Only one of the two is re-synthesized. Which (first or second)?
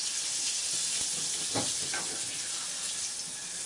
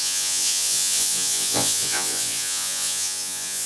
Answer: second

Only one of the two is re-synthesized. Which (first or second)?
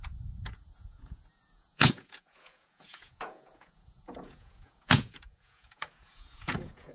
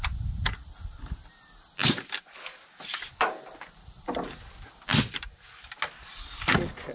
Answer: first